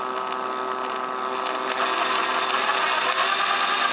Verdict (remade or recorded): recorded